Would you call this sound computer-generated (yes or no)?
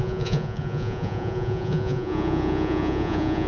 yes